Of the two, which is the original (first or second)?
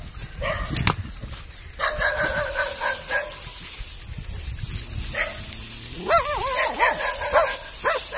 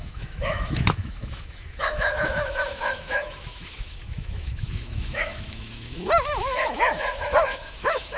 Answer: first